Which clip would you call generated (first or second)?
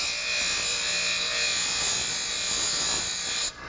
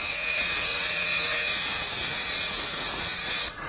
second